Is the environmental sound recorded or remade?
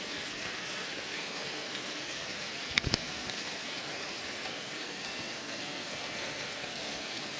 remade